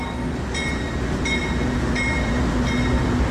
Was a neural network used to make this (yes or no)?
no